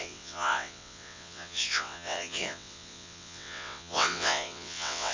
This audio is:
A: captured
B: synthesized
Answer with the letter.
B